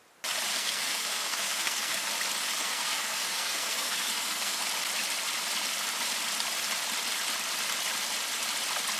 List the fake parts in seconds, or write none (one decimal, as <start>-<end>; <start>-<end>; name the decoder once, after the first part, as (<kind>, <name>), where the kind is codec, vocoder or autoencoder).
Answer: 0.5-2.1 (codec, SNAC); 2.6-4.6